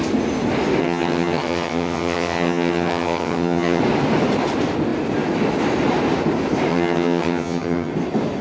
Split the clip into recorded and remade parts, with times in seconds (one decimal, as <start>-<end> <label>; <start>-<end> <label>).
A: 0.0-0.8 recorded; 0.8-3.8 remade; 3.8-6.7 recorded; 6.7-7.9 remade; 7.9-8.4 recorded